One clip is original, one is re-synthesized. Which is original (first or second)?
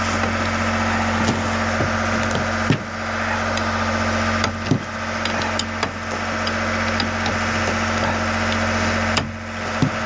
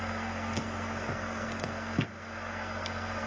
first